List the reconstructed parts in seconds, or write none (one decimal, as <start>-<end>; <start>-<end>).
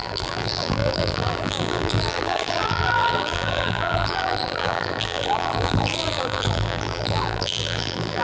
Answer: 0.0-8.2